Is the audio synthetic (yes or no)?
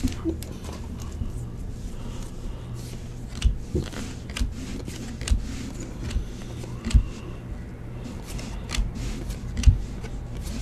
no